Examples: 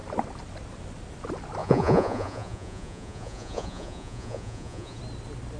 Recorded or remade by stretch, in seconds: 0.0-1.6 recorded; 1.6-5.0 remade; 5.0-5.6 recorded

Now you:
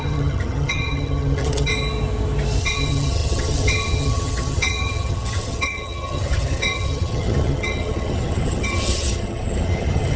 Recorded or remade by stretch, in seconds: 0.0-1.7 remade; 1.7-2.6 recorded; 2.6-10.2 remade

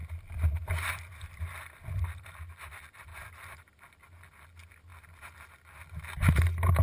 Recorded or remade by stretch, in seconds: 0.0-2.3 remade; 2.3-3.1 recorded; 3.1-3.6 remade; 3.6-6.8 recorded

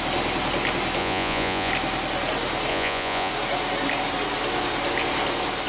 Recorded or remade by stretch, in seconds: 0.0-1.0 recorded; 1.0-1.7 remade; 1.7-2.7 recorded; 2.7-3.3 remade; 3.3-5.7 recorded

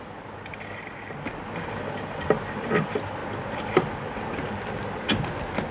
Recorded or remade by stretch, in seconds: 0.0-5.7 recorded